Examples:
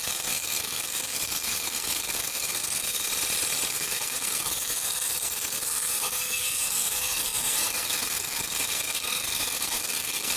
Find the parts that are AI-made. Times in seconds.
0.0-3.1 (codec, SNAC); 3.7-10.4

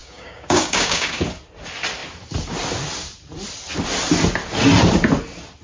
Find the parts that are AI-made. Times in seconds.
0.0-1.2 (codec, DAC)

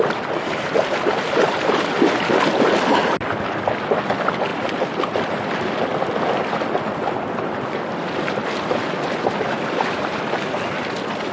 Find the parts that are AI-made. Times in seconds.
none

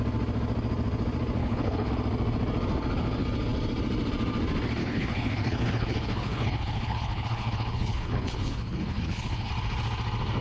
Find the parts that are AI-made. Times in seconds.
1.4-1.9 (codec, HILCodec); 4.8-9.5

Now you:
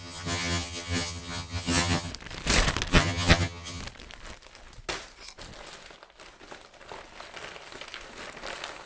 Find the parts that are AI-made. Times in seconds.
0.0-2.1 (vocoder, HiFi-GAN); 2.9-3.8

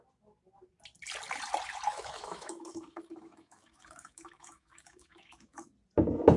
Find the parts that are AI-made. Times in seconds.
1.9-5.7 (autoencoder, DAC-VAE)

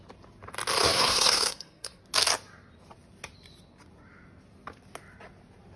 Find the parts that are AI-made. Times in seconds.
0.8-2.0 (codec, SNAC)

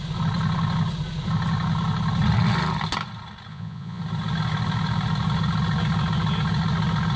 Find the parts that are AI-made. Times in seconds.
3.5-4.0 (vocoder, Vocos)